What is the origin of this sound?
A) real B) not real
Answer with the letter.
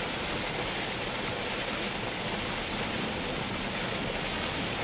A